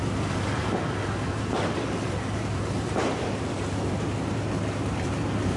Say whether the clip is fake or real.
fake